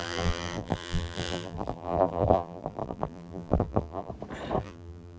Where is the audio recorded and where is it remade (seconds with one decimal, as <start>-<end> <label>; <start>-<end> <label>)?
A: 0.0-4.1 remade; 4.1-4.6 recorded; 4.6-5.2 remade